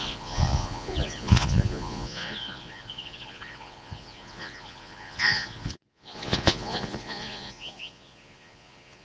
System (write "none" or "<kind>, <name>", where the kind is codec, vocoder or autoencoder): vocoder, Vocos